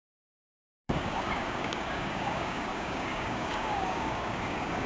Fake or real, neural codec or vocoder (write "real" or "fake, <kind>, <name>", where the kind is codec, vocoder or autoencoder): fake, codec, DAC